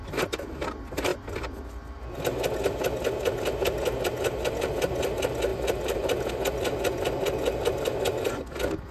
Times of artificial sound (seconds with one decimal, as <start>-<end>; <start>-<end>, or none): 5.5-6.3